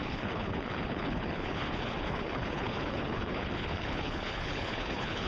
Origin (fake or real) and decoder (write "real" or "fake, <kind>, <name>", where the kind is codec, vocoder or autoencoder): fake, codec, HILCodec